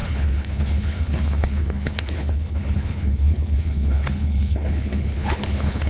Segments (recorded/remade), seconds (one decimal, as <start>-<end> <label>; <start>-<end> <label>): 0.0-5.9 remade

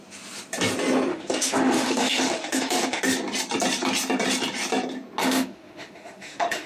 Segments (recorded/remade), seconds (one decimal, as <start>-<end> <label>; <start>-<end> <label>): 0.0-1.1 recorded; 1.1-3.0 remade; 3.0-5.2 recorded; 5.2-6.7 remade

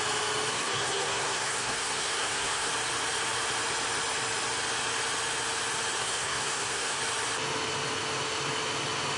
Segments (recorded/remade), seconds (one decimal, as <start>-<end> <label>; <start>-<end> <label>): 0.0-0.5 recorded; 0.5-2.7 remade; 2.7-6.0 recorded; 6.0-7.0 remade; 7.0-9.2 recorded

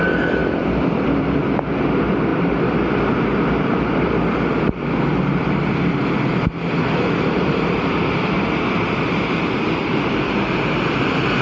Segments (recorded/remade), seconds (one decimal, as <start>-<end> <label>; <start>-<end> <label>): 0.0-2.3 remade; 2.3-2.9 recorded; 2.9-11.4 remade

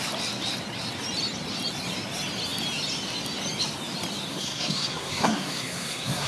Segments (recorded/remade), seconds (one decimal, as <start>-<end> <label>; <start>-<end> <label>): 0.0-4.3 recorded; 4.3-6.3 remade